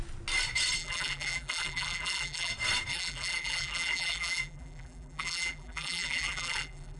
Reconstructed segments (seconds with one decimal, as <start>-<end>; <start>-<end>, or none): 0.8-2.5; 2.9-7.0